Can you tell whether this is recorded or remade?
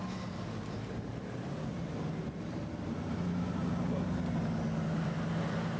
recorded